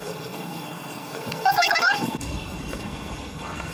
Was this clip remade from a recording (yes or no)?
yes